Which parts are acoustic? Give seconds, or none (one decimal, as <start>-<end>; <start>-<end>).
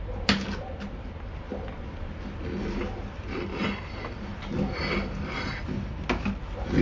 0.0-6.8